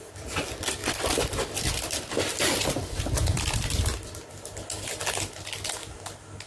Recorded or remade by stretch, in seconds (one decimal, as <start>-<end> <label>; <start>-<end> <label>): 0.0-0.8 recorded; 0.8-4.3 remade; 4.3-6.5 recorded